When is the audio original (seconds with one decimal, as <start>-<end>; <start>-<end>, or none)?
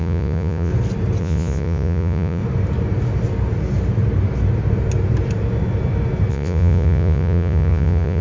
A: 0.7-1.2; 2.4-6.3